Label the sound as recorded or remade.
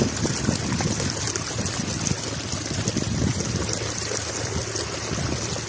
recorded